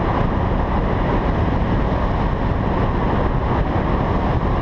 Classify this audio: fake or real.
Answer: real